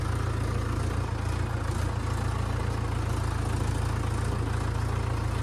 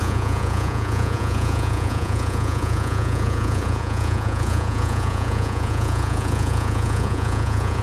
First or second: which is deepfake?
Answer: second